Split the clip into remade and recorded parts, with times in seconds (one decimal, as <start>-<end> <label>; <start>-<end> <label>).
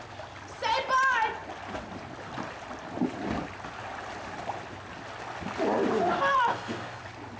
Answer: 0.0-6.5 recorded; 6.5-7.0 remade; 7.0-7.4 recorded